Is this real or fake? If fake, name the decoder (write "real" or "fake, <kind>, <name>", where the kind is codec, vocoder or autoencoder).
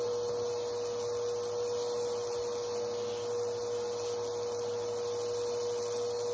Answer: real